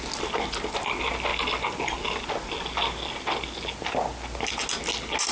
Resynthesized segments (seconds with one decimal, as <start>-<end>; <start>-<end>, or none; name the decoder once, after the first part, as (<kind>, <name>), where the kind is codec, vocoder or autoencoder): none

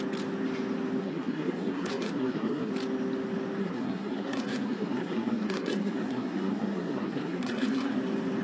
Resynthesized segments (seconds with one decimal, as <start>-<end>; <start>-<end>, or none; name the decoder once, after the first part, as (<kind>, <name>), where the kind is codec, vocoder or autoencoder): 1.0-2.7 (codec, SNAC); 3.6-8.0

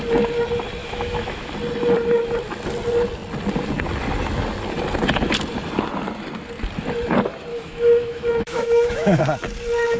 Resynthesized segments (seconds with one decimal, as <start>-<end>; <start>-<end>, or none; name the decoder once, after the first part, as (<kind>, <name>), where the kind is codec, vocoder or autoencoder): 0.8-1.5 (autoencoder, DAC-VAE); 7.5-9.2

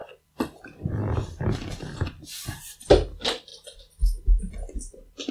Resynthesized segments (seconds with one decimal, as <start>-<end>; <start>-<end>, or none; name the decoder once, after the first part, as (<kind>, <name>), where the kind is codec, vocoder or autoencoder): 0.0-2.6 (vocoder, BigVGAN v2)

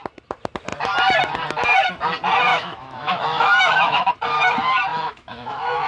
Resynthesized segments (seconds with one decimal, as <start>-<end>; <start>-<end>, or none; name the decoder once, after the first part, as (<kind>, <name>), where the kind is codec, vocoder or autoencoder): 2.5-4.1 (autoencoder, DAC-VAE); 4.9-5.9

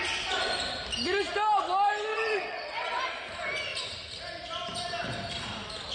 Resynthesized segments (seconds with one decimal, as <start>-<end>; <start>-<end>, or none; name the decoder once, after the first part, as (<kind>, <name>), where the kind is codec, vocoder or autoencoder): 2.1-3.0 (vocoder, WaveNeXt)